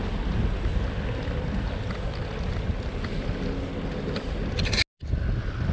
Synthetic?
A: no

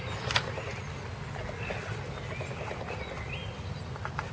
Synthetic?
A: no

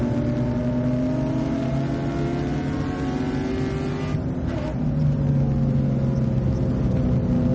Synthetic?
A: no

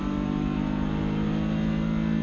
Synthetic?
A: no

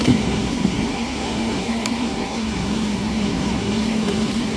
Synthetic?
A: yes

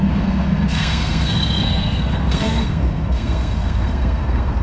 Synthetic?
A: yes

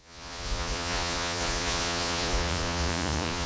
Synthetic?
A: yes